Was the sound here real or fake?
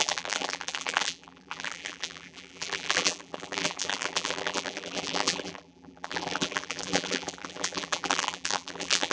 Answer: fake